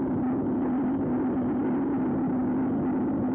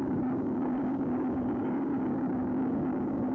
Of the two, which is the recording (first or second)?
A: first